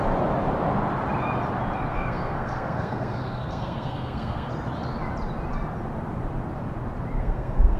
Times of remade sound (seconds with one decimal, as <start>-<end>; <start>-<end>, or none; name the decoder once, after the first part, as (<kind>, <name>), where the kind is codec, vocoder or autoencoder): 1.9-4.5 (codec, SNAC); 7.2-7.8